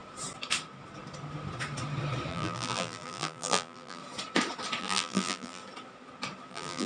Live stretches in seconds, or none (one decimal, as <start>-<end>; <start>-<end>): 0.0-2.3; 4.0-4.8; 5.6-6.5